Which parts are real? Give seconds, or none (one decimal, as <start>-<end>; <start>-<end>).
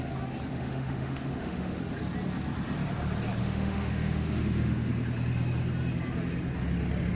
0.0-0.5; 1.8-3.4; 4.9-7.1